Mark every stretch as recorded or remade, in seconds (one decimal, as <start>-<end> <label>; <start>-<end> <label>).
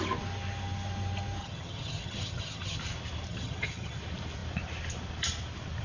0.0-1.4 recorded; 1.4-2.8 remade; 2.8-3.3 recorded; 3.3-4.0 remade; 4.0-5.8 recorded